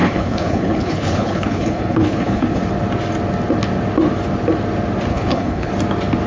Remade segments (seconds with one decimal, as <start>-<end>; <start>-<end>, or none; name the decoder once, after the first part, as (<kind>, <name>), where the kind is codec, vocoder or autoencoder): 0.0-2.6 (codec, HILCodec); 5.1-5.7